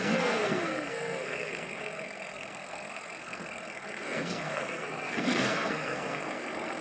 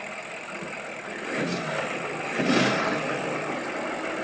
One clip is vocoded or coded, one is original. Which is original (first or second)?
second